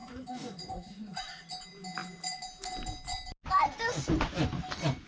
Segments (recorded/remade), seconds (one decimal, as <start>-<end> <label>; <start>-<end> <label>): 0.0-1.5 remade; 1.5-5.1 recorded